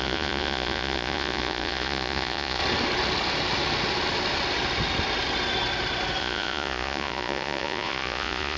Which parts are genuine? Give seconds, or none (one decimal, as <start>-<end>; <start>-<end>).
2.6-6.2